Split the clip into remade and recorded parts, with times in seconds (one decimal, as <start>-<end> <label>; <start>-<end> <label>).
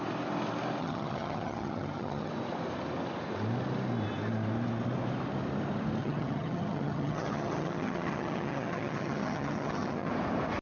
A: 0.0-0.8 recorded; 0.8-2.3 remade; 2.3-6.0 recorded; 6.0-10.1 remade; 10.1-10.6 recorded